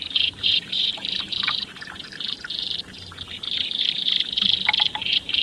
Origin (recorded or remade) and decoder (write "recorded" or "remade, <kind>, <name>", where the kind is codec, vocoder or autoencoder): remade, vocoder, BigVGAN v2